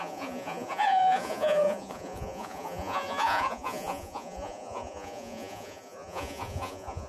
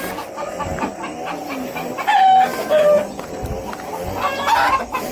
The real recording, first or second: second